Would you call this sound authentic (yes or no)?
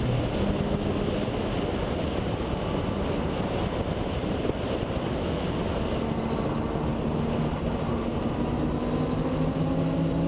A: yes